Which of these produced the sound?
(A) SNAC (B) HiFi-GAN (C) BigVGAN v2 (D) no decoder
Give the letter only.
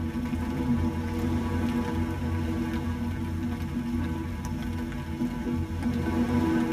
D